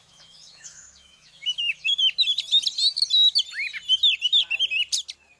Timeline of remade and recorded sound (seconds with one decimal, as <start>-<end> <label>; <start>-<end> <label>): 0.0-2.0 remade; 2.0-5.4 recorded